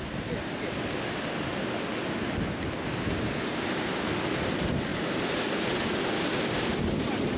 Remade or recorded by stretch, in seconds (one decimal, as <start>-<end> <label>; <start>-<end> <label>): 0.0-7.4 recorded